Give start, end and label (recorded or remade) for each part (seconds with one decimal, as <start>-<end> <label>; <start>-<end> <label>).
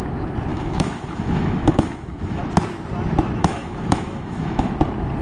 0.0-0.5 recorded; 0.5-2.4 remade; 2.4-3.4 recorded; 3.4-4.7 remade; 4.7-5.2 recorded